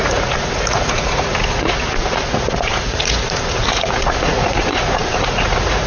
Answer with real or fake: fake